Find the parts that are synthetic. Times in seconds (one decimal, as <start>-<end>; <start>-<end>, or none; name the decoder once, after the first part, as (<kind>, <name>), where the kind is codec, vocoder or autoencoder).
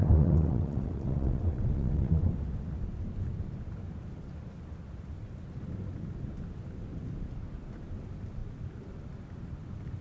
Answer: 0.0-2.3 (vocoder, WaveNeXt)